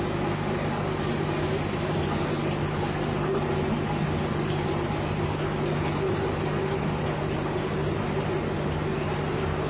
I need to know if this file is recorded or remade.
recorded